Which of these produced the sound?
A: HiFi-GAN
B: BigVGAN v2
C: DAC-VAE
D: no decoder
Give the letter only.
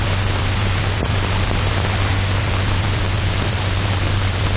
B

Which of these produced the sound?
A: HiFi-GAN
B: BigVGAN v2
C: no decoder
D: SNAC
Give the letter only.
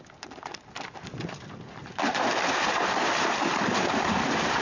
C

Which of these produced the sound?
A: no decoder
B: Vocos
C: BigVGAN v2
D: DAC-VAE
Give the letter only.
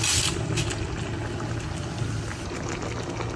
A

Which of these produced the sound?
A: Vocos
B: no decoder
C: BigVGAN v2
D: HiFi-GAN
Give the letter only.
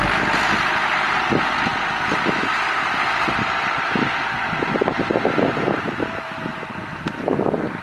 B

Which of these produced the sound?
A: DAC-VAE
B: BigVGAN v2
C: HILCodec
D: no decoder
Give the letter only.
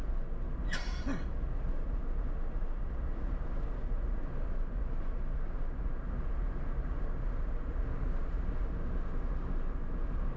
D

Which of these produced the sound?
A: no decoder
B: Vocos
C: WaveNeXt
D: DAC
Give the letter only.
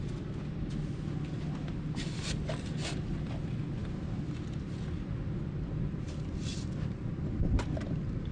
A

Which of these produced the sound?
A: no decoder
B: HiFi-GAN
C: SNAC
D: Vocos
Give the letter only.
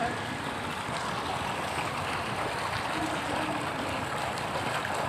A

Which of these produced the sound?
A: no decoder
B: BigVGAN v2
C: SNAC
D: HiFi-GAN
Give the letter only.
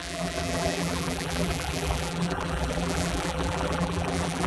B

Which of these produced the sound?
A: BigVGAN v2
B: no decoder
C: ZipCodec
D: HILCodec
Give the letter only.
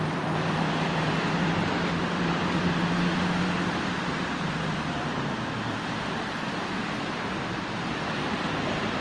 A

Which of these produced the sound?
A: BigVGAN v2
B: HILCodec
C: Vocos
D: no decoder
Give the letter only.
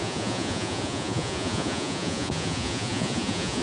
C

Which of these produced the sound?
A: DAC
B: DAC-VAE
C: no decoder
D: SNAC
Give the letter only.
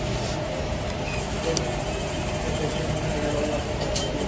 C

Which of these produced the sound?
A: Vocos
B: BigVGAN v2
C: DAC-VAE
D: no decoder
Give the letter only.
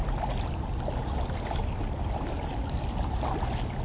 D